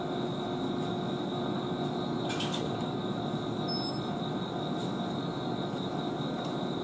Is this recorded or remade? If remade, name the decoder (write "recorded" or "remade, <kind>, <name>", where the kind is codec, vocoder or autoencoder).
recorded